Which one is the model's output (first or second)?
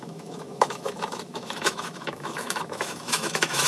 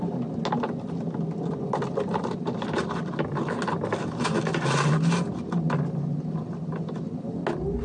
first